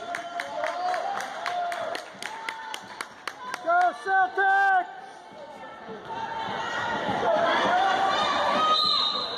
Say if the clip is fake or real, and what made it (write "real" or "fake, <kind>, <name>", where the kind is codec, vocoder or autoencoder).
real